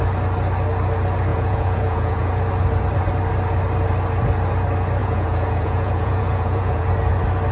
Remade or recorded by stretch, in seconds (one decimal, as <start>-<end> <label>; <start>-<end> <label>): 0.0-1.3 recorded; 1.3-2.3 remade; 2.3-5.0 recorded; 5.0-6.9 remade; 6.9-7.5 recorded